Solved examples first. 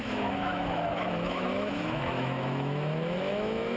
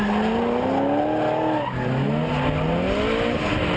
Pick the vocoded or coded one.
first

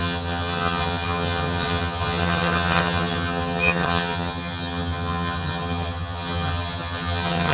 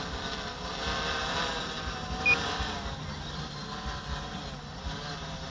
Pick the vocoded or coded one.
first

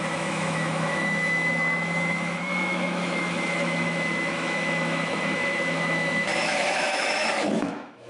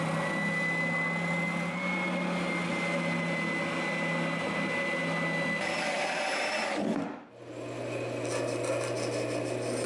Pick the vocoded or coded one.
first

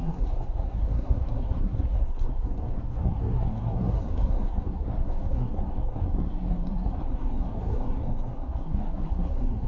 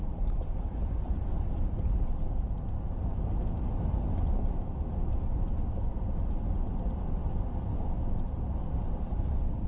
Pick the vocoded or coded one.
first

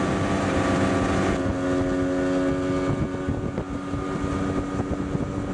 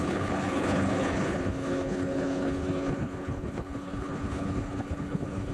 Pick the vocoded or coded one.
second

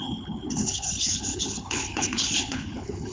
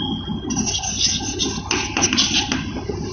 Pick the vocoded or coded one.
first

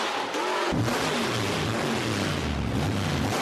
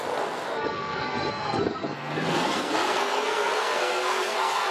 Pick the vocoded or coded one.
second